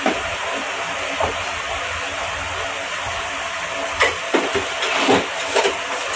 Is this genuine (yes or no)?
yes